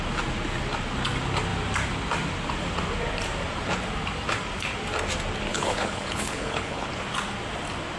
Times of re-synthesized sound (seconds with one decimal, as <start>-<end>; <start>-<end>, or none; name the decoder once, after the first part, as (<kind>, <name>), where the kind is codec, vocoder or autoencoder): 5.5-6.9 (codec, HILCodec)

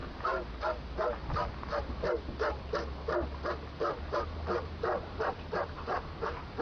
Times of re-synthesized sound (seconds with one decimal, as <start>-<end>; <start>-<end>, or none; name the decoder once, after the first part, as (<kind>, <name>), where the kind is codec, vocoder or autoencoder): 4.0-6.6 (vocoder, BigVGAN v2)